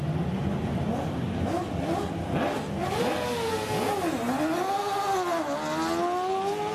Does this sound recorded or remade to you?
recorded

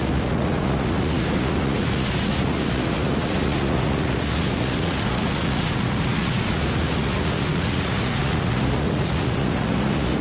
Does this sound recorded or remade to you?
remade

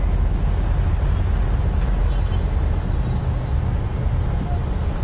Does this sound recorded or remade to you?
recorded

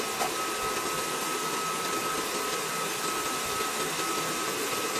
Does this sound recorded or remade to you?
recorded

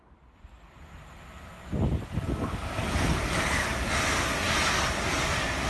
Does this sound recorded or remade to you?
recorded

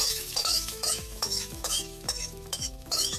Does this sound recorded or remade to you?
remade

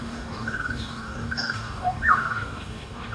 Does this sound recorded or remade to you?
remade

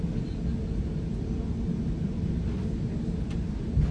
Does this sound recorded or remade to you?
recorded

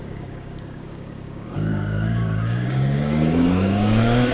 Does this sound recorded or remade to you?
remade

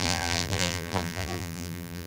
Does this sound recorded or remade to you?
remade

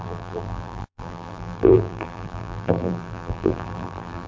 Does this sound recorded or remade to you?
remade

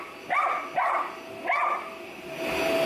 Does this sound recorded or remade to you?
recorded